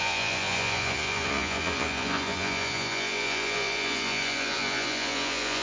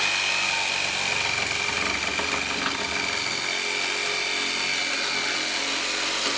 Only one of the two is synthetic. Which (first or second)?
first